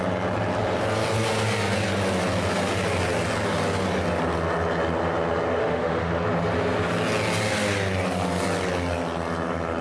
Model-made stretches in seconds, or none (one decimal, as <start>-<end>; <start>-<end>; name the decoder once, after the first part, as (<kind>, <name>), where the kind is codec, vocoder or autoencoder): 5.6-6.1 (autoencoder, DAC-VAE)

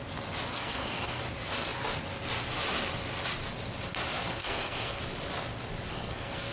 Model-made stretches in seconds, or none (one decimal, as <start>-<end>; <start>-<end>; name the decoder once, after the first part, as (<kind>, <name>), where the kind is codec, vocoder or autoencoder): 0.5-1.2 (codec, SNAC); 4.4-5.0; 5.9-6.5

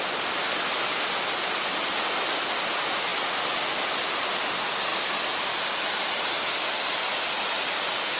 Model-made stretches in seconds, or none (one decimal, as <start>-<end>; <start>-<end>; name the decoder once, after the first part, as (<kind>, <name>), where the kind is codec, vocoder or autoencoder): none

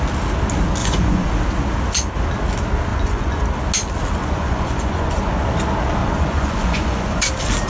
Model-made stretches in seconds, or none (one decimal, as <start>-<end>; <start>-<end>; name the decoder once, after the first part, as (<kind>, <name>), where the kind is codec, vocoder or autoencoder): 0.8-1.3 (vocoder, Vocos); 2.9-3.4; 4.2-5.3; 6.0-7.3